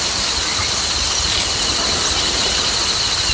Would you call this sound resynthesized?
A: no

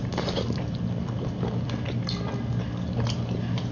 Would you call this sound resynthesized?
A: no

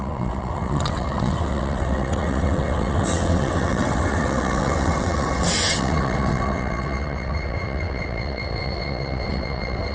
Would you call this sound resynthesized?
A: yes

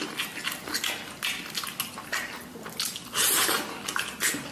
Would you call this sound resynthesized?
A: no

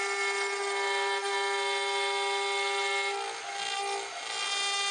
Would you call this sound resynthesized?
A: no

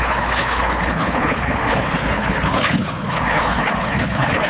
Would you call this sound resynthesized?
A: yes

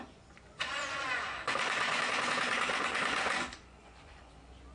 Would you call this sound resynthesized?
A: yes